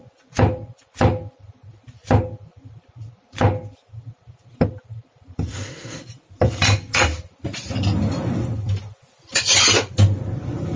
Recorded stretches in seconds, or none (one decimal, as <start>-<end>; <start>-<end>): 0.0-5.5; 6.0-10.8